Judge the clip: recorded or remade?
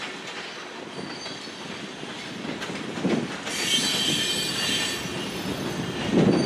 recorded